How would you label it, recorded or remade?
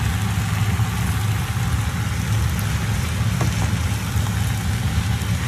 recorded